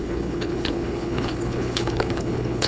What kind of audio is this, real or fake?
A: fake